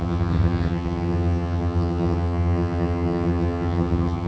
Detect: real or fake fake